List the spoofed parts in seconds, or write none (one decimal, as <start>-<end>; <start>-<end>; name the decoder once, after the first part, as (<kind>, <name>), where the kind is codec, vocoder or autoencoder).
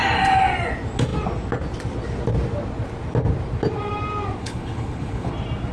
4.4-5.3 (codec, HILCodec)